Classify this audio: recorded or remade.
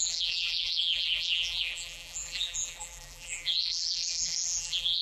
remade